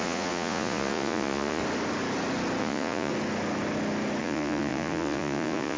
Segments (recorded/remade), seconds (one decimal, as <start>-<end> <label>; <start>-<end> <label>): 0.0-1.6 remade; 1.6-2.6 recorded; 2.6-3.1 remade; 3.1-4.2 recorded; 4.2-5.8 remade